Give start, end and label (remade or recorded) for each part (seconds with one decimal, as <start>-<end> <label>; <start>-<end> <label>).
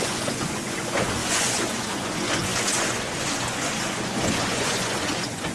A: 0.0-5.5 remade